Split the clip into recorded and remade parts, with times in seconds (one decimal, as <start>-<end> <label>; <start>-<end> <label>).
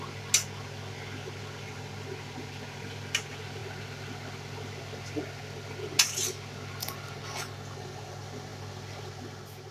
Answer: 0.0-9.7 recorded